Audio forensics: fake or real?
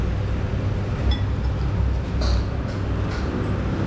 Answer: real